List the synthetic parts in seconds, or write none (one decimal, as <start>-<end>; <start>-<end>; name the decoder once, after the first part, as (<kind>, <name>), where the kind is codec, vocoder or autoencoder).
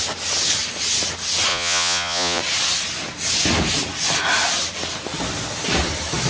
1.5-2.4 (vocoder, Vocos)